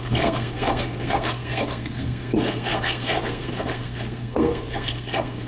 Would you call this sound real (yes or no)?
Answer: no